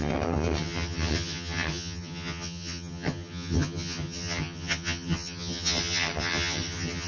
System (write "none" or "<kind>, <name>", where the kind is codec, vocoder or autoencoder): vocoder, HiFi-GAN